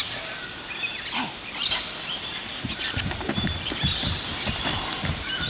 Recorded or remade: recorded